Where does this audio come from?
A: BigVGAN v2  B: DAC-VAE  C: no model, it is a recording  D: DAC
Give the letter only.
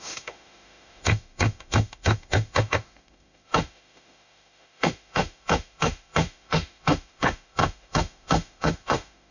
B